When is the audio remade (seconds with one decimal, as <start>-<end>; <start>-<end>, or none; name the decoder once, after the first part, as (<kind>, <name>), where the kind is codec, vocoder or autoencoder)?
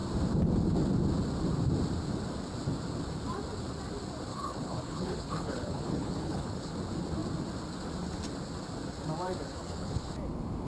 4.3-6.7 (codec, HILCodec); 9.5-10.1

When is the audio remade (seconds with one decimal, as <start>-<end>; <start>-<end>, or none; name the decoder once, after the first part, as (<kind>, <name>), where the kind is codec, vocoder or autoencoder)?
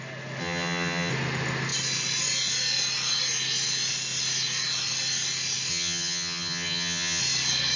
0.4-1.1 (vocoder, HiFi-GAN); 5.7-7.2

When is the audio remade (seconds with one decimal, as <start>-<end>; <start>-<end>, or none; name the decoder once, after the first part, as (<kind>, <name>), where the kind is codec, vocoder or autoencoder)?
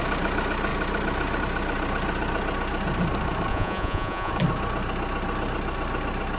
3.5-4.3 (vocoder, Vocos)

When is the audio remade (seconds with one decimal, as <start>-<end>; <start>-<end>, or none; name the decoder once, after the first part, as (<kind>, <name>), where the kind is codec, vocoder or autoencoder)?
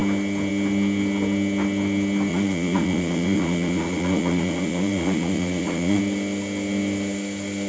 2.3-6.0 (vocoder, Vocos)